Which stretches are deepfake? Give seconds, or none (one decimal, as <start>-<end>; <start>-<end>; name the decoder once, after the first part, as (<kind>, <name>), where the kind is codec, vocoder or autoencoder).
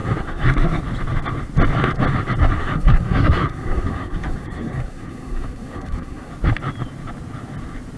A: 0.0-0.8 (codec, SNAC); 2.4-6.3